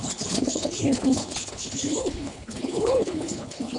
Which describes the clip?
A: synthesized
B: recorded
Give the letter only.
A